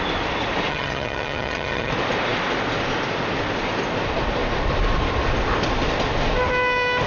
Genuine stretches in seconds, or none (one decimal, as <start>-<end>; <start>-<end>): 0.0-0.7; 1.9-7.1